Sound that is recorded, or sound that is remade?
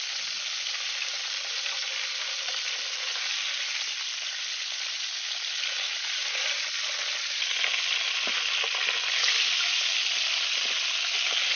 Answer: recorded